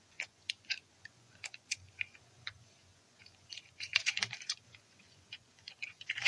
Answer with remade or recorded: remade